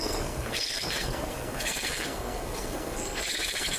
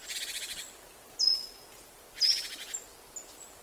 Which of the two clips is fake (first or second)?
first